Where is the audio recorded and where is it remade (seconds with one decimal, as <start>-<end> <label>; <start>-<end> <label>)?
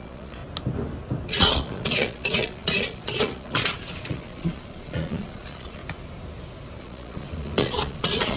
0.0-0.4 remade; 0.4-1.3 recorded; 1.3-5.8 remade; 5.8-6.8 recorded; 6.8-8.4 remade